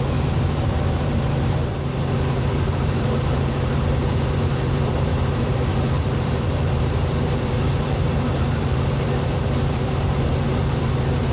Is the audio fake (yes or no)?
yes